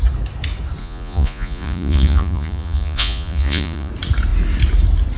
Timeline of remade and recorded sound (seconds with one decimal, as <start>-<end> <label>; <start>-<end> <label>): 0.0-0.8 recorded; 0.8-3.9 remade; 3.9-5.2 recorded